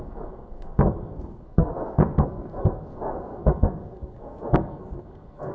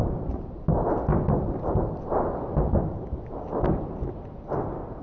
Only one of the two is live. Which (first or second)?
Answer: second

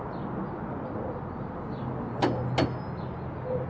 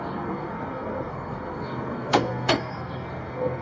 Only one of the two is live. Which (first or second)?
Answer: first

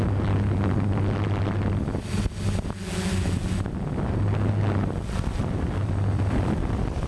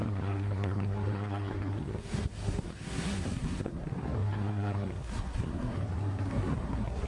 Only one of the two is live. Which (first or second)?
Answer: first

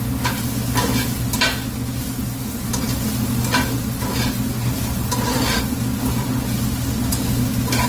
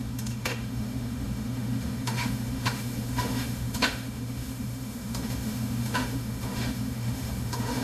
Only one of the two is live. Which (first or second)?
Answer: first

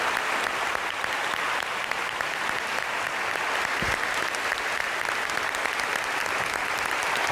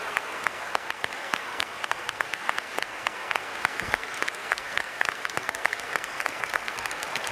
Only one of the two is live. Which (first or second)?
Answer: first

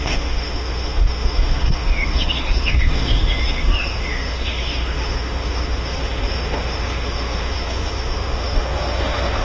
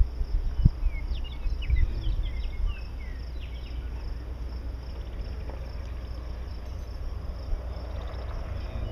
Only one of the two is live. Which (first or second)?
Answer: second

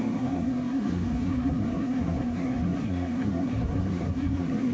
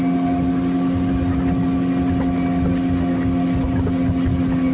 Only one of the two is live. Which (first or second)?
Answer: second